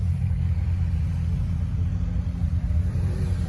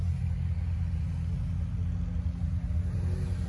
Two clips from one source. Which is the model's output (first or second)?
first